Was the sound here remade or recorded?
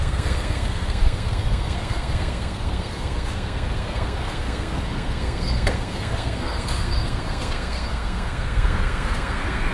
remade